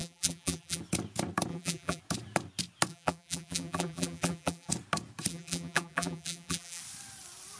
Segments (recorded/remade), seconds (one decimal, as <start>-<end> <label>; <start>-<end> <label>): 0.0-0.8 remade; 0.8-1.5 recorded; 1.5-2.0 remade; 2.0-2.9 recorded; 2.9-4.7 remade; 4.7-5.3 recorded; 5.3-6.8 remade; 6.8-7.6 recorded